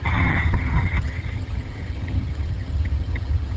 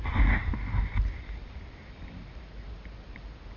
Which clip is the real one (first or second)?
second